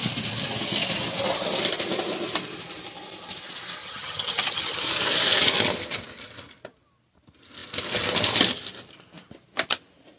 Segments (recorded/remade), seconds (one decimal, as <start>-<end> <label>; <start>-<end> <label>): 0.0-3.8 recorded; 3.8-4.8 remade; 4.8-10.2 recorded